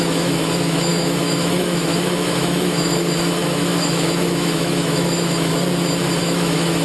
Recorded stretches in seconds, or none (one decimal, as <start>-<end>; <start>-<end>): 5.5-6.2